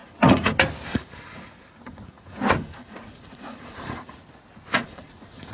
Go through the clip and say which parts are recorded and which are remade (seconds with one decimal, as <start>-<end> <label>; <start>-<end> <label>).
0.0-0.5 remade; 0.5-0.9 recorded; 0.9-4.2 remade; 4.2-4.7 recorded; 4.7-5.5 remade

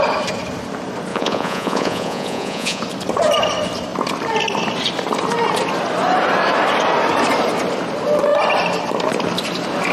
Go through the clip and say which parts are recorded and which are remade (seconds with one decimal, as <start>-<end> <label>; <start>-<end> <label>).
0.0-1.1 recorded; 1.1-2.8 remade; 2.8-9.9 recorded

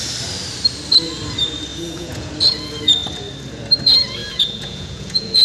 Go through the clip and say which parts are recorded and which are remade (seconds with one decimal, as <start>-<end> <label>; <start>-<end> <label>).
0.0-1.7 recorded; 1.7-2.3 remade; 2.3-4.2 recorded; 4.2-5.4 remade

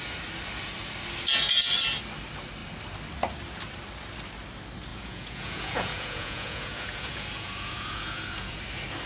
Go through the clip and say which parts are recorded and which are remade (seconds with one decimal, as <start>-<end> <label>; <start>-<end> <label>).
0.0-4.9 recorded; 4.9-8.6 remade; 8.6-9.1 recorded

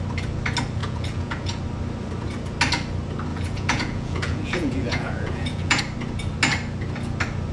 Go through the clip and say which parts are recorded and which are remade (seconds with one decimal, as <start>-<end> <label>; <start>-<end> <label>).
0.0-0.8 recorded; 0.8-1.6 remade; 1.6-3.3 recorded; 3.3-5.8 remade; 5.8-7.5 recorded